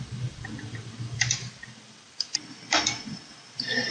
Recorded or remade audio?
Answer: remade